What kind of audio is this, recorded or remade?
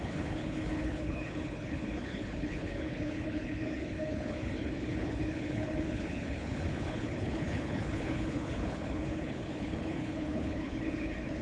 remade